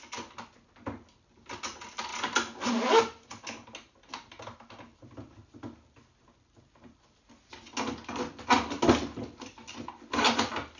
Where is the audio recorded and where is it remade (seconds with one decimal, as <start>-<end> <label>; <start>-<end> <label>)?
0.0-10.8 recorded